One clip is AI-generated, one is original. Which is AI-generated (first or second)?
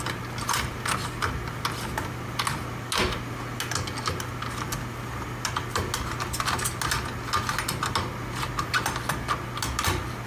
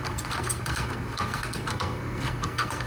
second